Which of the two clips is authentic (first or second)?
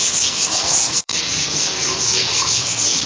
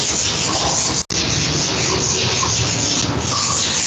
second